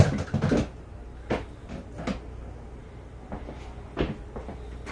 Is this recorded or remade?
recorded